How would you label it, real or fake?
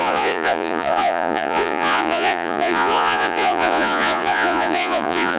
fake